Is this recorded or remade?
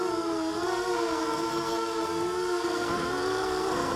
remade